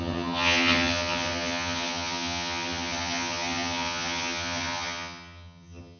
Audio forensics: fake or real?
fake